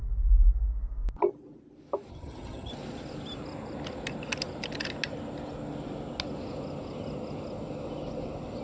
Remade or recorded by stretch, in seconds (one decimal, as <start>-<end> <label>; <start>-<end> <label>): 0.0-2.1 recorded; 2.1-2.7 remade; 2.7-8.6 recorded